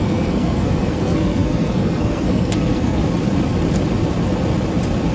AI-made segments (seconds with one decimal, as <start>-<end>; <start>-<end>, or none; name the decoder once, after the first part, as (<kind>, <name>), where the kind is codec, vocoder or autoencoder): 0.0-3.0 (codec, SNAC)